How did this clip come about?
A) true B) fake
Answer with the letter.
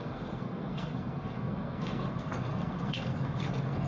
B